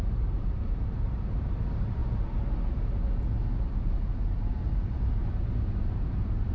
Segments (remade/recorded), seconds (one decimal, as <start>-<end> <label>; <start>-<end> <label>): 0.0-2.0 remade; 2.0-3.8 recorded; 3.8-5.2 remade; 5.2-5.8 recorded; 5.8-6.5 remade